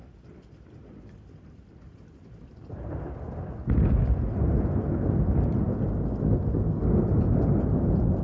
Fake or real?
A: real